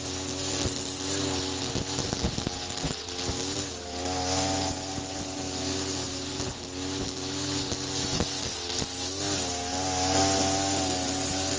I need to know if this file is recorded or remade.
recorded